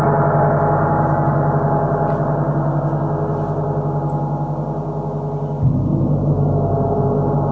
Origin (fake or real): real